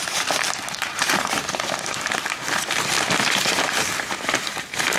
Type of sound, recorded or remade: recorded